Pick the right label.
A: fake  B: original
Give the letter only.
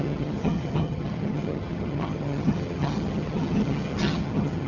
A